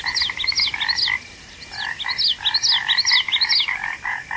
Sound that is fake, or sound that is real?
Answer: real